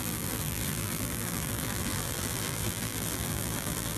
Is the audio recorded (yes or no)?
no